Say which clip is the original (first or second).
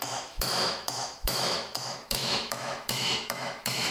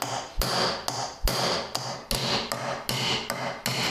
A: second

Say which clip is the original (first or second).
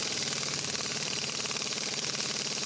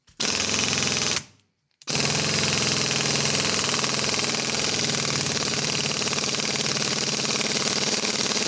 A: second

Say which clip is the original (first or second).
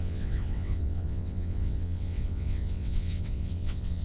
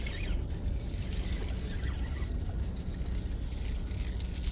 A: second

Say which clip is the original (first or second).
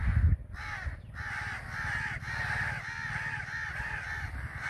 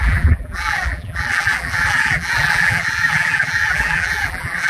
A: first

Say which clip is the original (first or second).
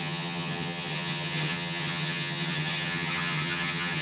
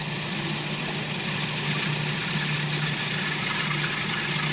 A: second